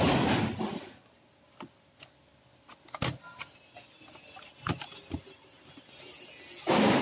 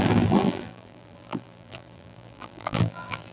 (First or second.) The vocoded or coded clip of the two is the second